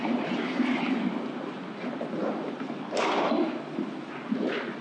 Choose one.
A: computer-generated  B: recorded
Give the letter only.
B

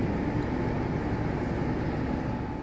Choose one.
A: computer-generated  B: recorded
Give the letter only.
B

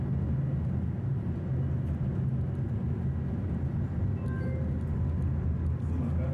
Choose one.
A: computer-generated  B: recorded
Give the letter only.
B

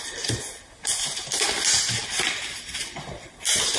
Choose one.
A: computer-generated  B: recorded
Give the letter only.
B